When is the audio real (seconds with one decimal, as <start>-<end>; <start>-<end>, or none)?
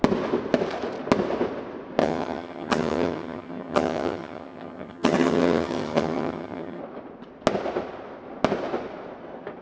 0.0-2.0; 6.8-9.6